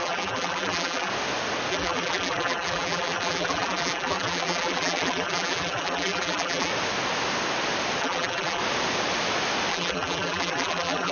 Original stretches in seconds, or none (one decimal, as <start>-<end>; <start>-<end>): 1.1-1.7; 6.7-8.0; 8.6-9.7